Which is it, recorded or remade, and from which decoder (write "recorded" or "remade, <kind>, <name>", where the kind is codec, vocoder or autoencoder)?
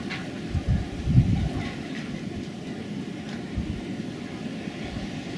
recorded